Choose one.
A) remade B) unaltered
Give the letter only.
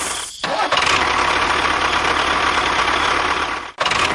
B